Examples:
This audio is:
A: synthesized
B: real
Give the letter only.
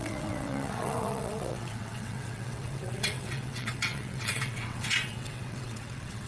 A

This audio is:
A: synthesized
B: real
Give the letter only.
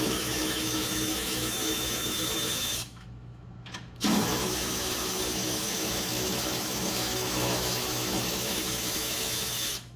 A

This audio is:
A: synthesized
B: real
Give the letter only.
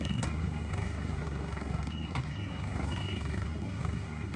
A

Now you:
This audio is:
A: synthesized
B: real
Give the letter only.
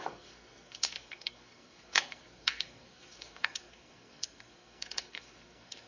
A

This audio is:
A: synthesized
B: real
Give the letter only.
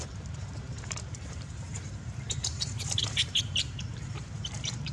A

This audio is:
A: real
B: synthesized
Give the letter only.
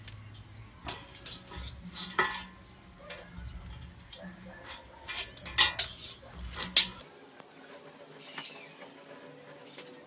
A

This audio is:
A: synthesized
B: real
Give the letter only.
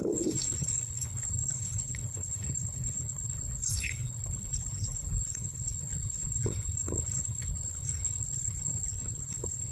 A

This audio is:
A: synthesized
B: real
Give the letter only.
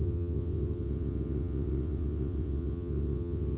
A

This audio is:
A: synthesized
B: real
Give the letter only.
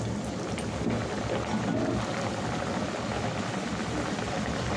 B